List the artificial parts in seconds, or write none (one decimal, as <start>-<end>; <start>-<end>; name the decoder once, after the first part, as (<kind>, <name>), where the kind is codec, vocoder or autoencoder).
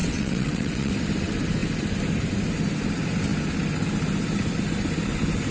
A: 0.0-0.9 (vocoder, WaveNeXt)